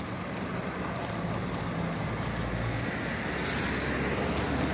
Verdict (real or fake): real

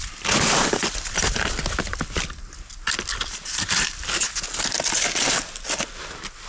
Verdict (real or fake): real